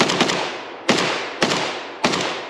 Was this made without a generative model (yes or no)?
yes